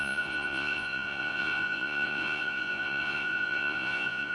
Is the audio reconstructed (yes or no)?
yes